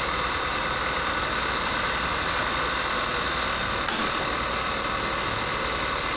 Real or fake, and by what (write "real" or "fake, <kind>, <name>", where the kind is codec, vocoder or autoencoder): real